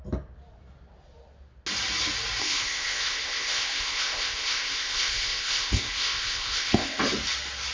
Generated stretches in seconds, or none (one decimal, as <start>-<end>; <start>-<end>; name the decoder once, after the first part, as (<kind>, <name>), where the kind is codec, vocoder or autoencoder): 2.4-7.0 (codec, ZipCodec)